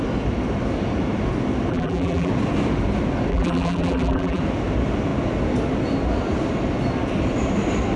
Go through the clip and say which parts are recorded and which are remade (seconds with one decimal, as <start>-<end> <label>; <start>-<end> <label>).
0.0-1.7 recorded; 1.7-2.3 remade; 2.3-3.3 recorded; 3.3-4.4 remade; 4.4-8.0 recorded